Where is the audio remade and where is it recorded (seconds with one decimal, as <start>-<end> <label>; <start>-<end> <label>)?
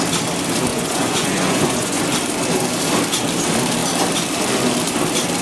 0.0-0.7 recorded; 0.7-2.0 remade; 2.0-5.4 recorded